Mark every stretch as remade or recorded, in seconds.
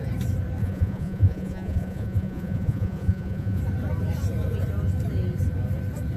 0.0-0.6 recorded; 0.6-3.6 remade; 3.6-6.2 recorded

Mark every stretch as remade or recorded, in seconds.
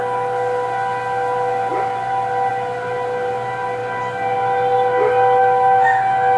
0.0-6.4 recorded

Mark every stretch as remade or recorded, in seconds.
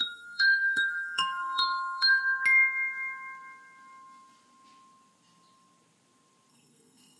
0.0-2.2 remade; 2.2-6.5 recorded; 6.5-7.2 remade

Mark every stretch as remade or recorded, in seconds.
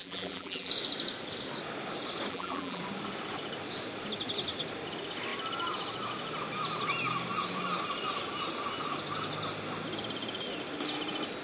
0.0-0.7 remade; 0.7-2.3 recorded; 2.3-2.8 remade; 2.8-11.4 recorded